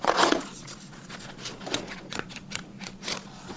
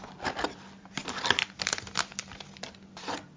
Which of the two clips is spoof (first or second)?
first